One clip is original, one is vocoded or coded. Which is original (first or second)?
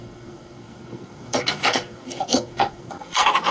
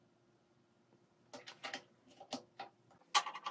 second